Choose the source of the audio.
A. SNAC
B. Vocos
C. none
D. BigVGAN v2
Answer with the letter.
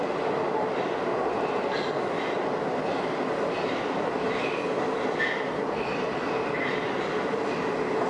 C